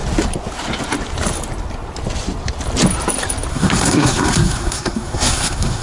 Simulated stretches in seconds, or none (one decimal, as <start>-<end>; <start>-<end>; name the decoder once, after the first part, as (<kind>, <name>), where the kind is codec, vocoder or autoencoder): 3.5-5.8 (codec, SNAC)

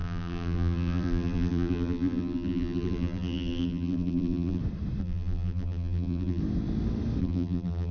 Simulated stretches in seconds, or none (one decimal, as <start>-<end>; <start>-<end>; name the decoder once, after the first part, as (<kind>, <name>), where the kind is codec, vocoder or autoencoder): 0.0-4.6 (vocoder, BigVGAN v2); 5.0-6.4; 7.2-7.9

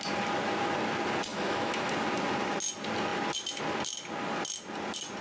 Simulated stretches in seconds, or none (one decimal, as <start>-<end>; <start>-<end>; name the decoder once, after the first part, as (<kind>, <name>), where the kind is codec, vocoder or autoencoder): 1.3-1.9 (autoencoder, DAC-VAE)